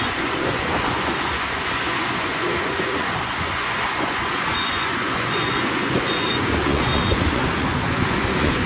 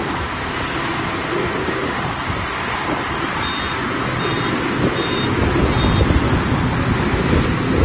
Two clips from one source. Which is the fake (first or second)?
first